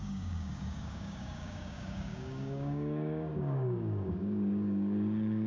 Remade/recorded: remade